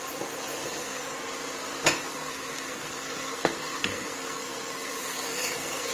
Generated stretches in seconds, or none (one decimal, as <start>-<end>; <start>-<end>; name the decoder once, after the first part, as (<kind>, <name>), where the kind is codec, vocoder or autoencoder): 0.5-1.0 (codec, SNAC); 2.1-5.9